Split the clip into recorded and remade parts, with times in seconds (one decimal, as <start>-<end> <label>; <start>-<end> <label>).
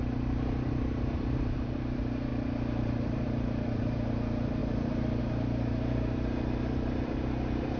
0.0-2.3 remade; 2.3-2.8 recorded; 2.8-7.8 remade